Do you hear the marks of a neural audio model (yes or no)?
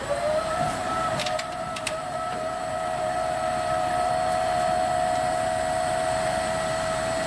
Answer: yes